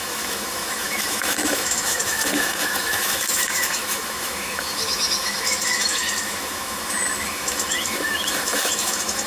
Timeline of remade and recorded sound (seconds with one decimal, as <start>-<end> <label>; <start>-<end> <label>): 0.0-9.3 remade